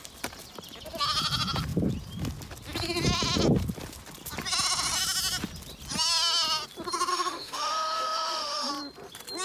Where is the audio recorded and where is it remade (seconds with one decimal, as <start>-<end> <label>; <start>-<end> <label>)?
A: 0.0-7.1 recorded; 7.1-8.7 remade; 8.7-9.4 recorded

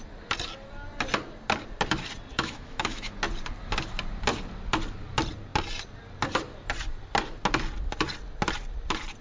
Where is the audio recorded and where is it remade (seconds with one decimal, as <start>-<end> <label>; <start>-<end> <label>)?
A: 0.0-2.3 recorded; 2.3-3.1 remade; 3.1-9.2 recorded

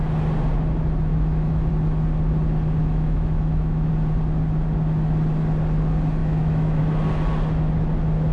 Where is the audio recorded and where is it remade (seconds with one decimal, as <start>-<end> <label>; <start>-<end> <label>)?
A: 0.0-1.1 recorded; 1.1-1.7 remade; 1.7-2.8 recorded; 2.8-3.9 remade; 3.9-6.2 recorded; 6.2-6.8 remade; 6.8-8.3 recorded

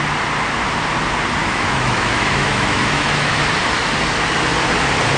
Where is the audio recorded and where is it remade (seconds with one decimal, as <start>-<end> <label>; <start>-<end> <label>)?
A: 0.0-1.4 recorded; 1.4-3.4 remade; 3.4-5.2 recorded

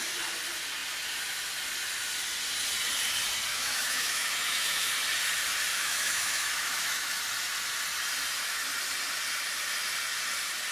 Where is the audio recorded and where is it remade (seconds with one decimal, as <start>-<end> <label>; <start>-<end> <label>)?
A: 0.0-3.5 recorded; 3.5-4.9 remade; 4.9-5.7 recorded; 5.7-7.2 remade; 7.2-10.7 recorded

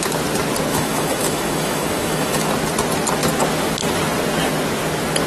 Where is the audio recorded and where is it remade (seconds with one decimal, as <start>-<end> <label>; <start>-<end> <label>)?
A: 0.0-0.7 recorded; 0.7-2.5 remade; 2.5-5.3 recorded